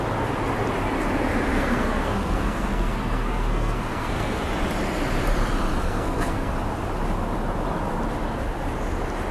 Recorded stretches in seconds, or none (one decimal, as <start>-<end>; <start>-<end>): 0.0-1.5; 4.4-5.8; 6.5-9.3